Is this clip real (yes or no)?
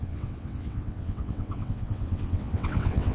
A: no